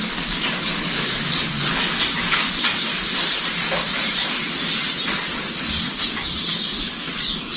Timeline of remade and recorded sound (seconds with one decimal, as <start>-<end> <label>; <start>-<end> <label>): 0.0-2.9 remade; 2.9-5.6 recorded; 5.6-7.6 remade